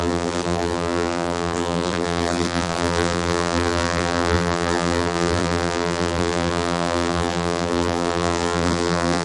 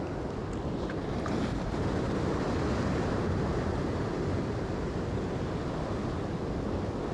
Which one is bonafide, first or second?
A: second